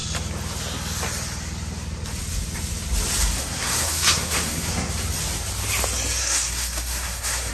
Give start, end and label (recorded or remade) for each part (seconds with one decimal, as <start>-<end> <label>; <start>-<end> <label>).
0.0-3.2 recorded; 3.2-4.9 remade; 4.9-6.2 recorded; 6.2-7.5 remade